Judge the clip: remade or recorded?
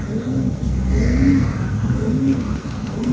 remade